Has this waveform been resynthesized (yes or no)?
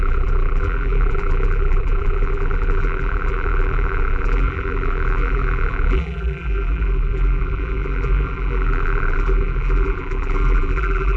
yes